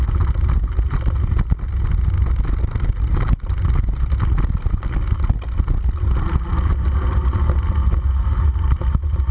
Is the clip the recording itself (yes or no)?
yes